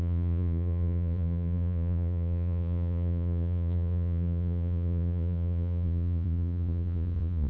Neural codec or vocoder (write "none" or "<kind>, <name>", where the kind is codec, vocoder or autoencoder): vocoder, Vocos